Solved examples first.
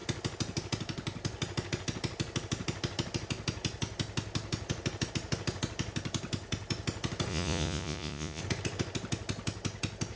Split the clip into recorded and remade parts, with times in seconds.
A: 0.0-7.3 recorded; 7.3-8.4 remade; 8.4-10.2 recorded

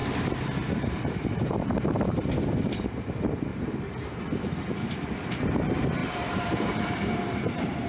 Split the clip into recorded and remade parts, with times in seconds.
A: 0.0-1.5 remade; 1.5-3.5 recorded; 3.5-4.2 remade; 4.2-6.0 recorded; 6.0-7.9 remade

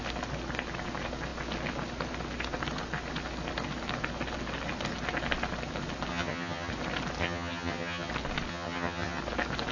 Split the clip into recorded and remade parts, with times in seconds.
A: 0.0-6.1 recorded; 6.1-6.7 remade; 6.7-7.2 recorded; 7.2-8.1 remade; 8.1-8.5 recorded; 8.5-9.2 remade; 9.2-9.7 recorded

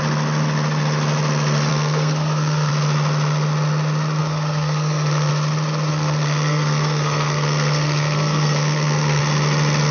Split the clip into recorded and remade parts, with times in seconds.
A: 0.0-1.7 recorded; 1.7-2.7 remade; 2.7-4.2 recorded; 4.2-5.3 remade; 5.3-5.9 recorded; 5.9-9.2 remade; 9.2-9.9 recorded